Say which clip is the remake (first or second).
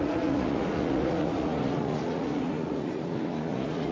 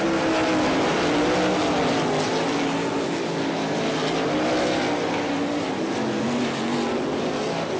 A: first